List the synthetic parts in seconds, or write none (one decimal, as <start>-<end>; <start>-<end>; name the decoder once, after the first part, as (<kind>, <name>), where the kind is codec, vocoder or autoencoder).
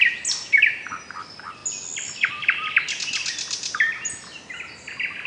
none